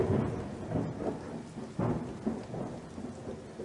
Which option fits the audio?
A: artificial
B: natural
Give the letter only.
B